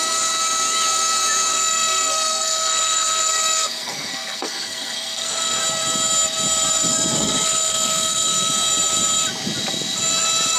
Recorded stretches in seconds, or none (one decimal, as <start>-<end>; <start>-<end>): 0.0-1.5; 5.6-6.9; 8.5-10.6